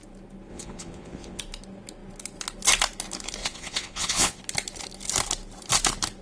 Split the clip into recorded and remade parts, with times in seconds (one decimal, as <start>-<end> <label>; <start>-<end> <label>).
0.0-0.5 recorded; 0.5-1.4 remade; 1.4-3.4 recorded; 3.4-4.4 remade; 4.4-6.2 recorded